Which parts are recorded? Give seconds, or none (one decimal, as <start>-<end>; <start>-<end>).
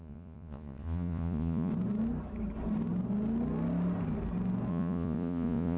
1.7-4.7